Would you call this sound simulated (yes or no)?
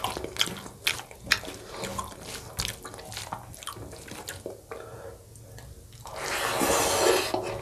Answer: no